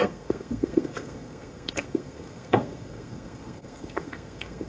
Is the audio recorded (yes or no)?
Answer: no